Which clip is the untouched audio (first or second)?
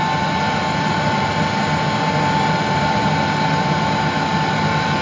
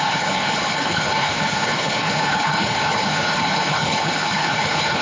first